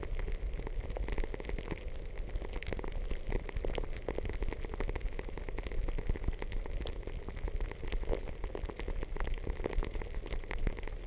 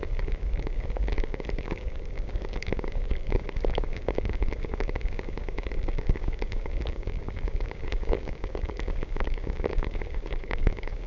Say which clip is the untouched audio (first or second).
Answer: first